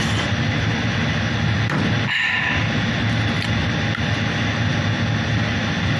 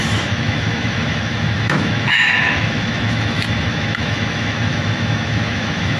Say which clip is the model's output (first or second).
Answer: second